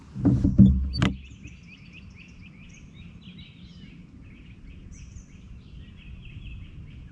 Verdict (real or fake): real